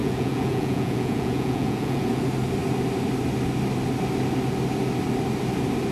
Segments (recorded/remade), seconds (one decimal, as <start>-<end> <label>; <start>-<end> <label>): 0.0-2.2 remade; 2.2-5.9 recorded